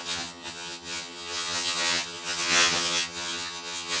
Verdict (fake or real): fake